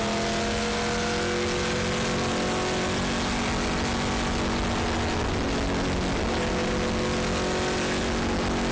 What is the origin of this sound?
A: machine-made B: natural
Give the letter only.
B